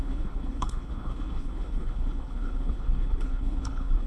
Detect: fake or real fake